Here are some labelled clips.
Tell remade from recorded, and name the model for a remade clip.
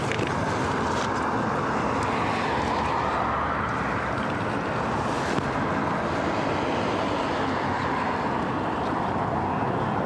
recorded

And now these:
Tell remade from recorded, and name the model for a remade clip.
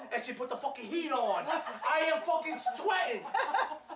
recorded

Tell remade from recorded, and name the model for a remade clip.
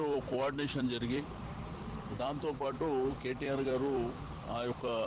remade, vocoder, BigVGAN v2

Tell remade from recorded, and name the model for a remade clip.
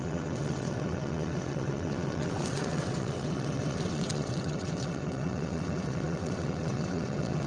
remade, vocoder, WaveNeXt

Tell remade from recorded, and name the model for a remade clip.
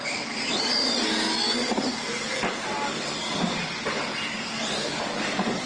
recorded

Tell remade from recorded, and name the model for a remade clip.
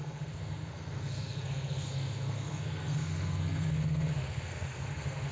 remade, codec, SNAC